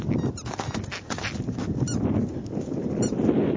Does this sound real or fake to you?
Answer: real